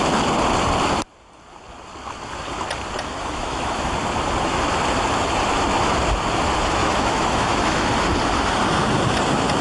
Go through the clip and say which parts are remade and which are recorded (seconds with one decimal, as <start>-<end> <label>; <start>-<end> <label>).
0.0-3.2 recorded; 3.2-3.9 remade; 3.9-6.8 recorded; 6.8-7.9 remade; 7.9-9.6 recorded